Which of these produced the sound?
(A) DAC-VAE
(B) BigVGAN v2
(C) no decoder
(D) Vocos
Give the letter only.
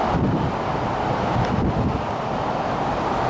C